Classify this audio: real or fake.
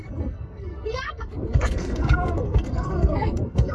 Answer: fake